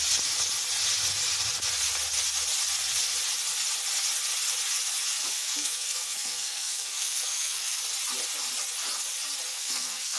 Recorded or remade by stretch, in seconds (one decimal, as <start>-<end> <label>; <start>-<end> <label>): 0.0-5.2 recorded; 5.2-7.8 remade; 7.8-9.5 recorded; 9.5-10.2 remade